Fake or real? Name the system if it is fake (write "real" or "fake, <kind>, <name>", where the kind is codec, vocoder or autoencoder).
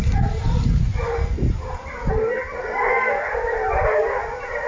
real